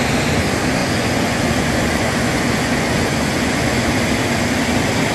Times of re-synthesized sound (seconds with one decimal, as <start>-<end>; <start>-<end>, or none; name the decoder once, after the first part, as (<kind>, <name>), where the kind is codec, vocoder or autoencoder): 0.8-3.9 (vocoder, Vocos)